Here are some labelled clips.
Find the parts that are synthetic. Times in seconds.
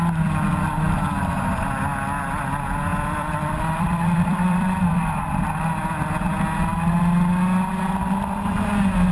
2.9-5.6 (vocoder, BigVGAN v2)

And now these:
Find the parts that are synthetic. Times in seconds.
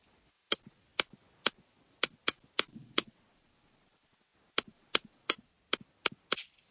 2.7-4.2 (vocoder, Vocos); 4.7-5.5